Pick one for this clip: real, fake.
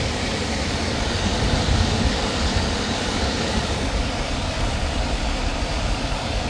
fake